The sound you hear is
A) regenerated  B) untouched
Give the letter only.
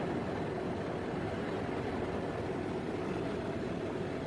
B